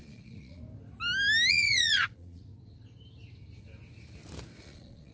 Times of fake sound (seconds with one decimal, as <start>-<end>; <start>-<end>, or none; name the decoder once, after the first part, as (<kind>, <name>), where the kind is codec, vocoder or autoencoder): 0.0-0.6 (vocoder, Vocos); 1.5-2.4; 4.6-5.1